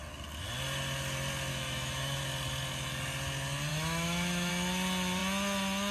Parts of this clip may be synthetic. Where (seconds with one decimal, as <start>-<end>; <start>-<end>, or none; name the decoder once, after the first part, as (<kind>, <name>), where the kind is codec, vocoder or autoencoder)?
1.5-2.1 (autoencoder, DAC-VAE); 3.7-4.5